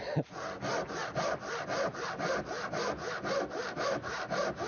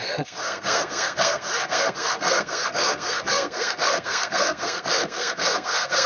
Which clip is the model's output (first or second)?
second